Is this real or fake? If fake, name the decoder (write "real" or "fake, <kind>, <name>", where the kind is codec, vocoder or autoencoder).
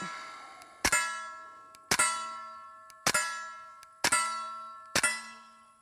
real